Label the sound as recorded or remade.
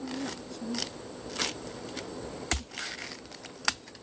recorded